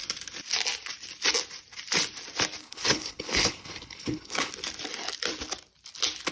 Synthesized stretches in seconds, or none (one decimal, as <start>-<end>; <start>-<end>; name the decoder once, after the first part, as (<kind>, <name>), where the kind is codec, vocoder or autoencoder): 2.6-4.5 (codec, HILCodec)